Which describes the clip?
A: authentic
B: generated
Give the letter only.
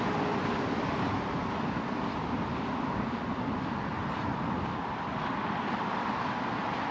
A